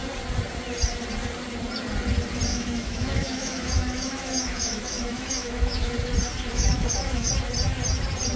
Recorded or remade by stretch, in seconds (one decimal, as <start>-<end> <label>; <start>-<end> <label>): 0.0-2.5 recorded; 2.5-5.9 remade; 5.9-6.5 recorded; 6.5-7.3 remade; 7.3-8.4 recorded